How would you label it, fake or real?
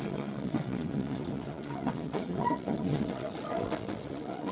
fake